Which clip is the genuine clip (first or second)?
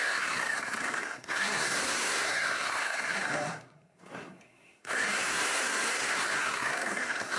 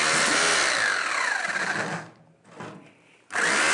second